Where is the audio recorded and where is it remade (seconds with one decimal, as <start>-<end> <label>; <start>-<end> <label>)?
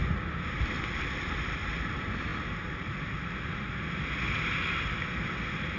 0.0-5.8 recorded